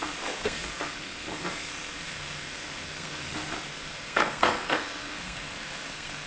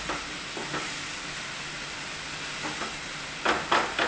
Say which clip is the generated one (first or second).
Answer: first